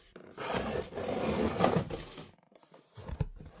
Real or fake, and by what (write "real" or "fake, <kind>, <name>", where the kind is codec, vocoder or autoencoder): real